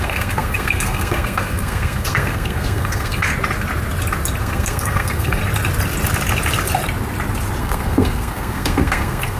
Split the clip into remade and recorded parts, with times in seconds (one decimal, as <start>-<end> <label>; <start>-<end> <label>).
0.0-3.3 remade; 3.3-4.4 recorded; 4.4-5.4 remade; 5.4-7.6 recorded; 7.6-9.4 remade